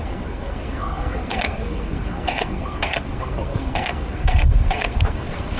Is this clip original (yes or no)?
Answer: no